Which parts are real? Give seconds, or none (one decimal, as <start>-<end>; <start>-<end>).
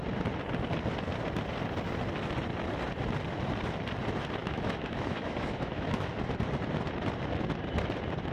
0.0-4.4; 6.1-8.3